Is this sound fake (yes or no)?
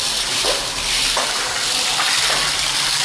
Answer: no